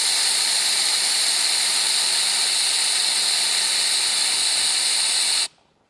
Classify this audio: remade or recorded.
recorded